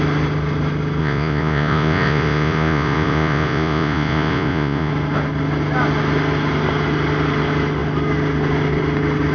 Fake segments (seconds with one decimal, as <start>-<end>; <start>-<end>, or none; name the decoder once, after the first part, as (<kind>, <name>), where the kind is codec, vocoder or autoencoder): 1.0-4.9 (vocoder, Vocos)